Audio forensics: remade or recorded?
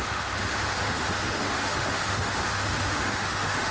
remade